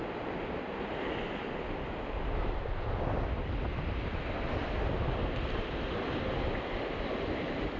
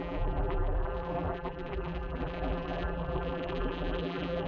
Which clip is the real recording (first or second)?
first